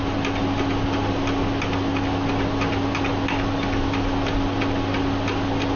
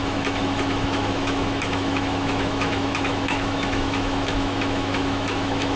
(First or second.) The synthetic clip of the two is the second